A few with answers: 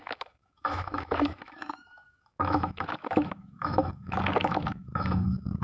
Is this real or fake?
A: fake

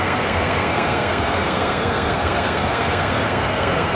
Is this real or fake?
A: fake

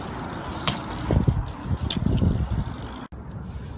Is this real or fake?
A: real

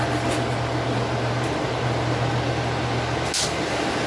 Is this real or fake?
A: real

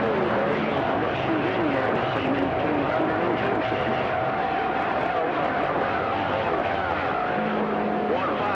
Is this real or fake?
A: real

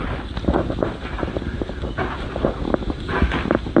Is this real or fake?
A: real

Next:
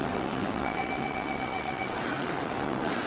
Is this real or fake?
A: fake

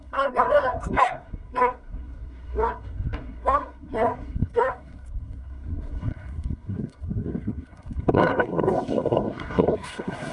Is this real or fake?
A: fake